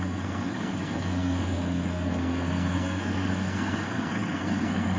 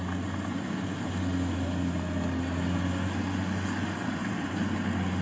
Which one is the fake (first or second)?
first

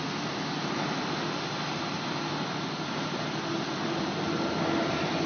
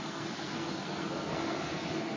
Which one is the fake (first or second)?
second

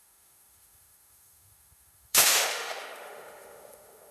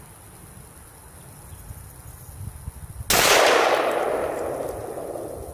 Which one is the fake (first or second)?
first